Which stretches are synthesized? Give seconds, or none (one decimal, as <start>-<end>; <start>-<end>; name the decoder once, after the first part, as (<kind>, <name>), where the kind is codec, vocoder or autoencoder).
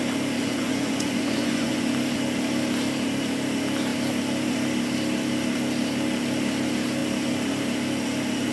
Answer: 0.4-1.9 (vocoder, Vocos)